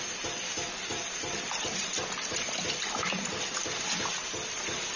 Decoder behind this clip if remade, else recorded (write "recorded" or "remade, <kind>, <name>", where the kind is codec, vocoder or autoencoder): recorded